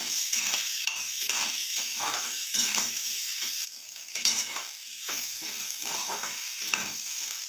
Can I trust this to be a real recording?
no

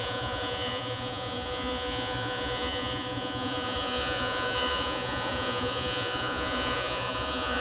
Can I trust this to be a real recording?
no